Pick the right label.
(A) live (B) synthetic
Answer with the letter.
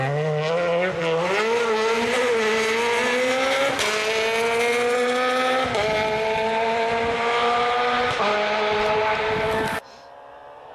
A